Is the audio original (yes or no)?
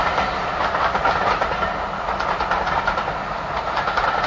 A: yes